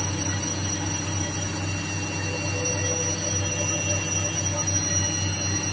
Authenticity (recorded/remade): recorded